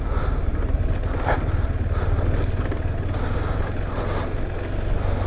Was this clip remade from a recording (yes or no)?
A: no